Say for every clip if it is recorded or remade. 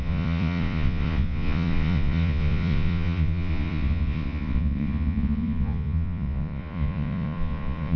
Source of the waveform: remade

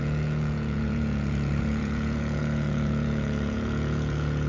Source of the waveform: remade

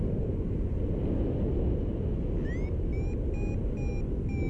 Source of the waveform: recorded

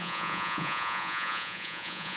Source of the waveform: remade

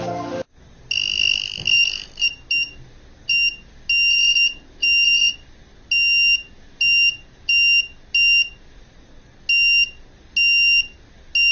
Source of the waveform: recorded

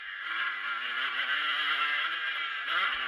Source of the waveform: recorded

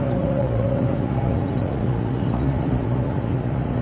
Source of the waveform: remade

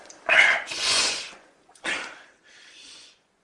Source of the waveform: remade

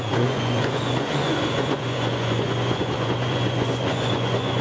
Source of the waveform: remade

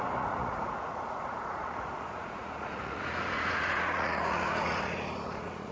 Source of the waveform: remade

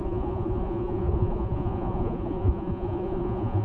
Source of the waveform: remade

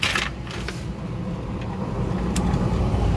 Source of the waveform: recorded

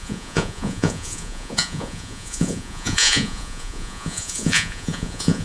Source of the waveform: remade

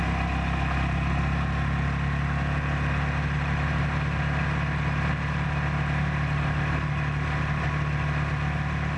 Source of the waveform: recorded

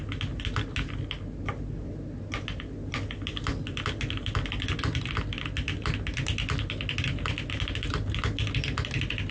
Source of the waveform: recorded